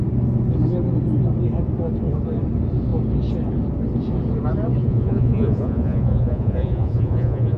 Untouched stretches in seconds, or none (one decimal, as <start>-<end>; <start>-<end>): 0.0-4.8